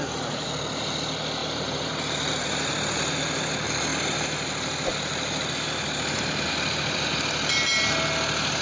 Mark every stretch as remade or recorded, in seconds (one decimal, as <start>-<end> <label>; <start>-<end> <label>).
0.0-1.4 recorded; 1.4-3.3 remade; 3.3-3.9 recorded; 3.9-5.5 remade; 5.5-8.6 recorded